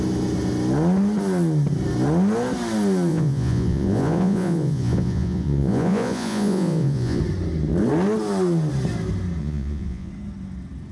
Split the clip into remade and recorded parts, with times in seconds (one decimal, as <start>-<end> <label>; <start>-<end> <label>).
0.0-3.1 recorded; 3.1-7.2 remade; 7.2-9.4 recorded; 9.4-10.1 remade; 10.1-10.9 recorded